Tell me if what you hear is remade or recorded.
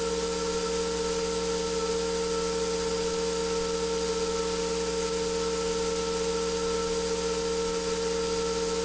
recorded